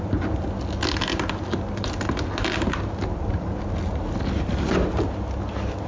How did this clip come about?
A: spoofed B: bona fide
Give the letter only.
B